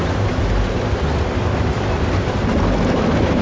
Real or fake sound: real